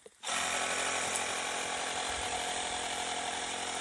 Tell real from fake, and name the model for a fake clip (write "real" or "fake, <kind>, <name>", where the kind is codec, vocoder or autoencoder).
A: real